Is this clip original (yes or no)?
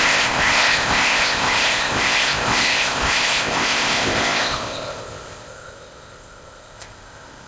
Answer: no